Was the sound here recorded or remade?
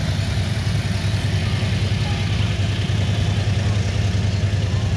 recorded